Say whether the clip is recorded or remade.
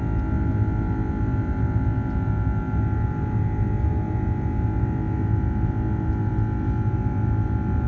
recorded